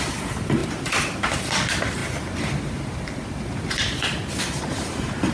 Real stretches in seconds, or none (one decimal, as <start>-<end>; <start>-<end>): 2.0-4.4

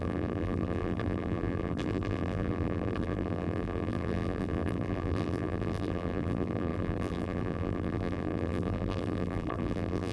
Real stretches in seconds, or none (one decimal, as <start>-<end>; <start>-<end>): none